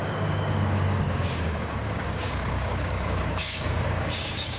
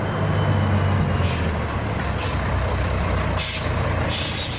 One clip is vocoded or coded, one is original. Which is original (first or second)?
second